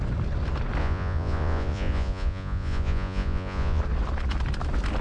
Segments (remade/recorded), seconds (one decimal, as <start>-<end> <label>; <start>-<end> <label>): 0.0-0.8 recorded; 0.8-3.8 remade; 3.8-5.0 recorded

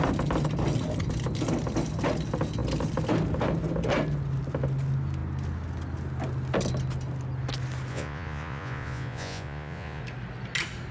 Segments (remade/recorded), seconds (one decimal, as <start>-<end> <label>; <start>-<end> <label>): 0.0-7.9 recorded; 7.9-10.0 remade; 10.0-10.9 recorded

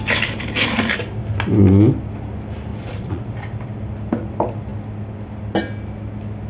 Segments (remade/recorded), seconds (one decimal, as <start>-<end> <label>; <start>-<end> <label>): 0.0-2.7 recorded; 2.7-3.2 remade; 3.2-6.5 recorded

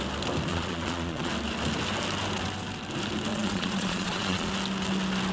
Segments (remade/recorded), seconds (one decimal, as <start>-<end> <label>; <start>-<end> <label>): 0.0-0.5 recorded; 0.5-1.3 remade; 1.3-3.3 recorded; 3.3-4.5 remade; 4.5-5.3 recorded

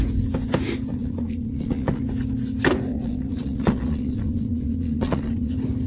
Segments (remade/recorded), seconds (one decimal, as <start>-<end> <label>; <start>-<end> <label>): 0.0-0.9 recorded; 0.9-2.0 remade; 2.0-2.9 recorded; 2.9-5.5 remade; 5.5-5.9 recorded

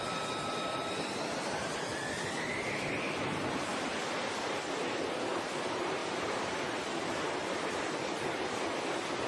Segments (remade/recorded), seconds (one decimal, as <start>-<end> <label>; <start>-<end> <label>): 0.0-9.3 recorded

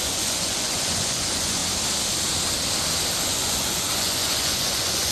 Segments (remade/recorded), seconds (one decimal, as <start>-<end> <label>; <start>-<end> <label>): 0.0-1.6 remade; 1.6-3.2 recorded; 3.2-5.1 remade